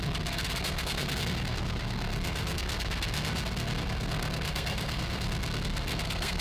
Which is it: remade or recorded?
remade